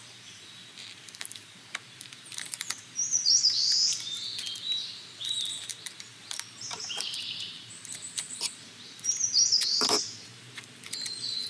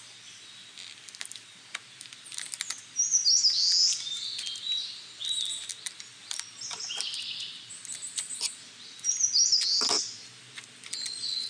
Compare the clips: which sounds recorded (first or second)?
second